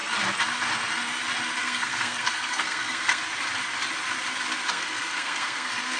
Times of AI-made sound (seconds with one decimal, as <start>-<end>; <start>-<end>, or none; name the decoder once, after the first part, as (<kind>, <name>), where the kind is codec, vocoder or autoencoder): 1.6-3.2 (codec, SNAC); 4.7-6.0